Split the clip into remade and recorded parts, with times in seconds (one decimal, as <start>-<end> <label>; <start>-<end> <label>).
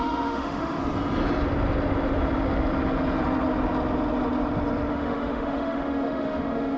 0.0-0.8 remade; 0.8-4.9 recorded; 4.9-6.8 remade